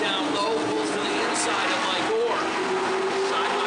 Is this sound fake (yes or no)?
no